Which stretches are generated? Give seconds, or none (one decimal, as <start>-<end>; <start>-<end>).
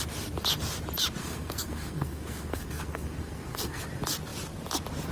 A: 1.2-3.8